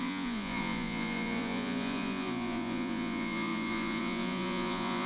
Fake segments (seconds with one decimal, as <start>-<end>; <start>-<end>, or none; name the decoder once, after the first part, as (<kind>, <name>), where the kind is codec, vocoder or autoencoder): 0.0-5.1 (vocoder, Vocos)